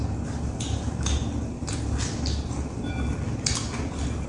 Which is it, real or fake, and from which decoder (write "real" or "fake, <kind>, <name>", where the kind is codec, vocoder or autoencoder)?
real